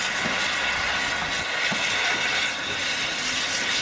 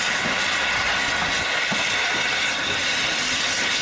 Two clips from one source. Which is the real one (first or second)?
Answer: first